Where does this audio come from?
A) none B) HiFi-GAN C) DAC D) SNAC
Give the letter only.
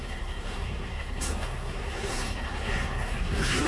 D